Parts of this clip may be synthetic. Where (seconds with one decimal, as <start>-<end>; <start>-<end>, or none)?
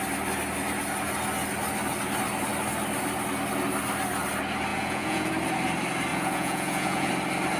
4.7-5.3; 6.1-7.1